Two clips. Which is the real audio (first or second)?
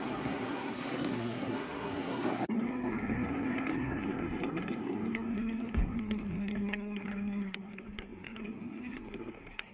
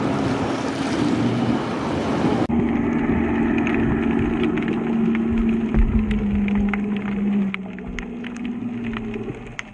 second